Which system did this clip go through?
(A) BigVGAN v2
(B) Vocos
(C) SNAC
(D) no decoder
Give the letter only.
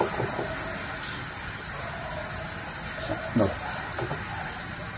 D